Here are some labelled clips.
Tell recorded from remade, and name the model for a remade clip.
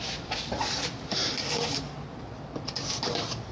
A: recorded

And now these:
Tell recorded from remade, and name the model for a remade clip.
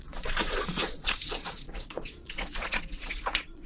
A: remade, vocoder, Vocos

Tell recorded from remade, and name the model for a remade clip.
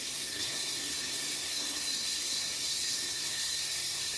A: remade, codec, SNAC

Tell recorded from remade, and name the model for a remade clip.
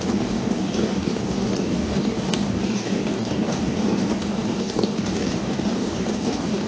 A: remade, codec, DAC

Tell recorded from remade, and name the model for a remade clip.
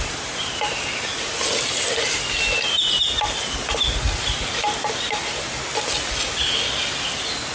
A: recorded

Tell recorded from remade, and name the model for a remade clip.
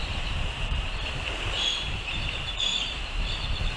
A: remade, vocoder, BigVGAN v2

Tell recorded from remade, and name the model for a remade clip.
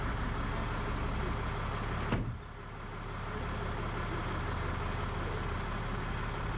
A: recorded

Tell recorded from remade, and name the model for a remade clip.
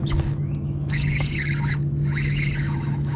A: remade, autoencoder, DAC-VAE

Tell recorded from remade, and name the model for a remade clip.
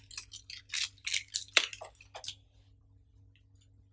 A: recorded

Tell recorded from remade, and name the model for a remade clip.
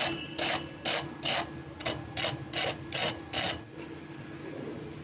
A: recorded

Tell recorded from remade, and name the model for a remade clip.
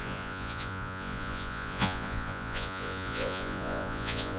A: remade, vocoder, Vocos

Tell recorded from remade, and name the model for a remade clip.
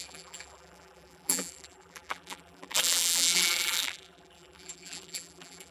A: remade, vocoder, BigVGAN v2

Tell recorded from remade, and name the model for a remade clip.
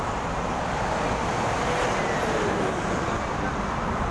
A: recorded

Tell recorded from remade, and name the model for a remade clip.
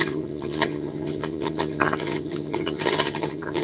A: remade, vocoder, HiFi-GAN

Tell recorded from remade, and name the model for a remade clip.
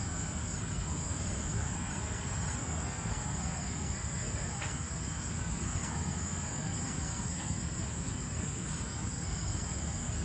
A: remade, codec, SNAC